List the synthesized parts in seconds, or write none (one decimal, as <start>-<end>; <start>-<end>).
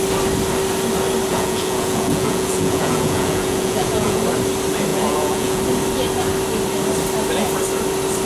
1.3-4.2; 4.9-5.6